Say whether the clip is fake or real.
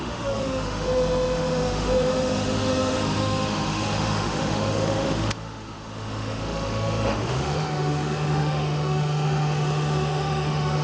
fake